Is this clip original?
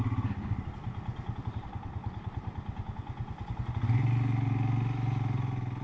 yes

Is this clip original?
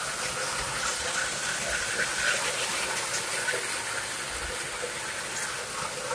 yes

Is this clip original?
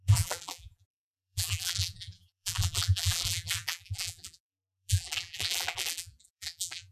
no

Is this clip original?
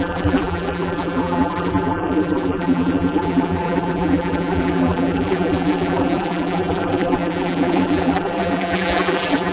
no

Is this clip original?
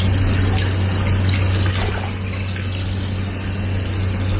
yes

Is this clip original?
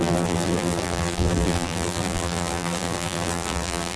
no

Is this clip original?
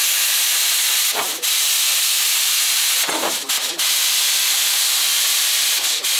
no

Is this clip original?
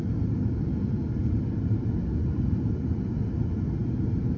yes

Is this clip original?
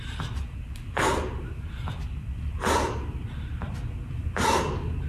yes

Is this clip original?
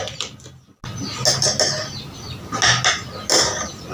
yes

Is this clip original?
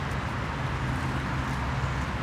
yes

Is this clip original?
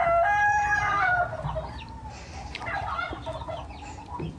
no